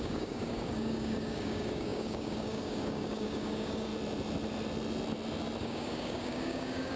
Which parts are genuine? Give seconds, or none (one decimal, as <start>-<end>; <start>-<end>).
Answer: 3.9-5.6